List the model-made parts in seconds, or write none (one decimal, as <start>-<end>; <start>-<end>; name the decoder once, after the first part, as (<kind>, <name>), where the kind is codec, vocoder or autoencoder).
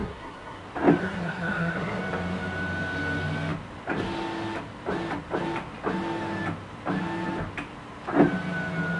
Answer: 0.0-0.6 (codec, SNAC); 1.0-2.0